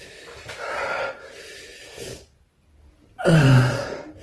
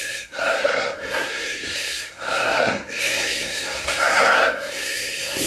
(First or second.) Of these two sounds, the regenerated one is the second